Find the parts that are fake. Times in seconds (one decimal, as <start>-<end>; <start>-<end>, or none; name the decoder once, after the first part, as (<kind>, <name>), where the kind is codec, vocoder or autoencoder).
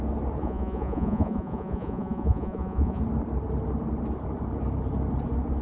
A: 0.4-3.0 (vocoder, Vocos)